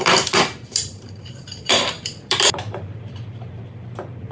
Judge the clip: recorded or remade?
remade